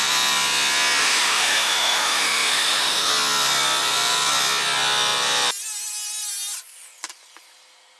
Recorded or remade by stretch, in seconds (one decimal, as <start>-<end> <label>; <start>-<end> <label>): 0.0-1.0 recorded; 1.0-3.1 remade; 3.1-8.0 recorded